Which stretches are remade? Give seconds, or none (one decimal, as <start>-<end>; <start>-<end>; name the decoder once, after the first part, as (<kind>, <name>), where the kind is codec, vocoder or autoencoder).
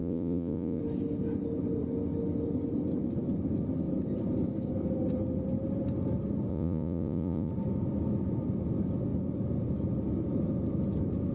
0.0-0.8 (vocoder, Vocos); 6.5-7.5